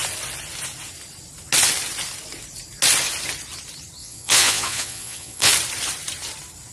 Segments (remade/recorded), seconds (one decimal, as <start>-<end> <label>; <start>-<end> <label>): 0.0-4.0 recorded; 4.0-5.5 remade; 5.5-6.7 recorded